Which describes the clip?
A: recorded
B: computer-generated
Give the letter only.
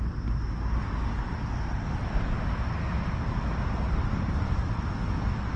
A